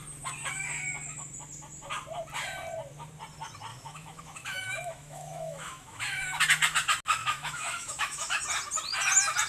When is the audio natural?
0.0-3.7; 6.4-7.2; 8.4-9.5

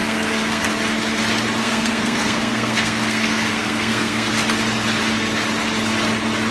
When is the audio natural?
0.7-1.6; 4.3-6.5

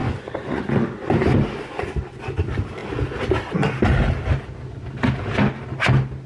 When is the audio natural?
0.6-6.3

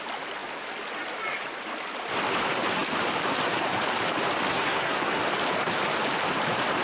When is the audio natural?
0.0-4.5; 5.2-6.8

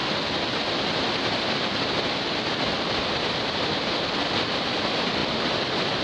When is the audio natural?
0.0-6.0

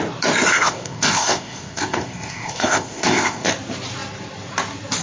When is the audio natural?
0.0-0.5; 3.5-5.0

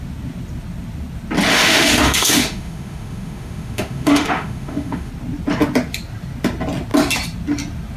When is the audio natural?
0.0-1.5; 5.1-8.0